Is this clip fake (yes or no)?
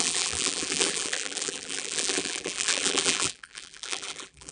yes